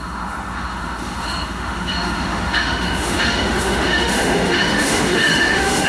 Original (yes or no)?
no